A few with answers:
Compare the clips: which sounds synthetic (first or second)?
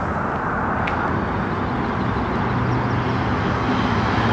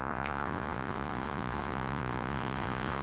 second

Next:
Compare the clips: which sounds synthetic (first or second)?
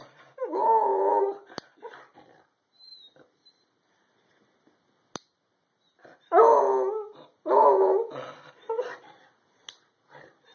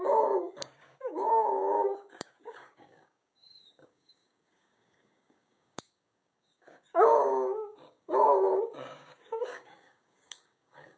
second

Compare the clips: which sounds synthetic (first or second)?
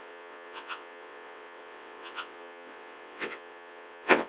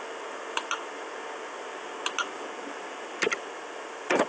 first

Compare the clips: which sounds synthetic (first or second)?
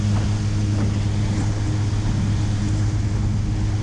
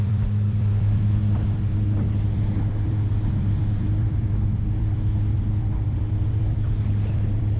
second